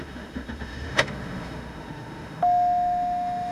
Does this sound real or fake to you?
fake